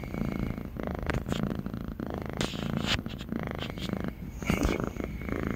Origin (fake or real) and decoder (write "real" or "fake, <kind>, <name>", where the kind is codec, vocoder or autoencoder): real